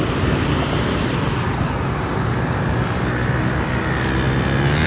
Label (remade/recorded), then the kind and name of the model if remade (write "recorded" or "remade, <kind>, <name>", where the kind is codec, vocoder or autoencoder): recorded